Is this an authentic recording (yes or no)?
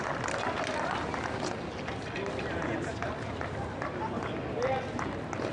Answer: yes